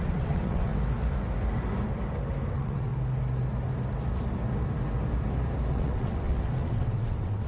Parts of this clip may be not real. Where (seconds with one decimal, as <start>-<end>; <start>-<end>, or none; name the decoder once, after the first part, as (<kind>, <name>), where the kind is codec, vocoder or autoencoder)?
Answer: 0.0-0.7 (vocoder, WaveNeXt); 2.5-2.9; 5.7-7.5

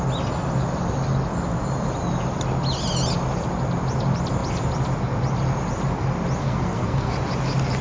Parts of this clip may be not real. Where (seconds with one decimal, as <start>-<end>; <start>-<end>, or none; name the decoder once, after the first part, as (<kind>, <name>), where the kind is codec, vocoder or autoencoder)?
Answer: 6.4-7.1 (codec, SNAC)

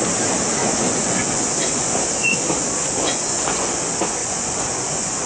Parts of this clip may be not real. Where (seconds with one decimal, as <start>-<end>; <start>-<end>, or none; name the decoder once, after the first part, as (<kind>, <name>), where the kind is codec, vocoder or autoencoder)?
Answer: 0.6-3.8 (vocoder, Vocos); 4.2-5.3

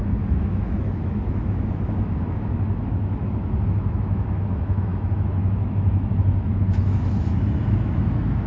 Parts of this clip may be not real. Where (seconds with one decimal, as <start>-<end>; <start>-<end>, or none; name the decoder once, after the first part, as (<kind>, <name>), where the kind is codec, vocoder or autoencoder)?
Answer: 0.0-8.5 (autoencoder, DAC-VAE)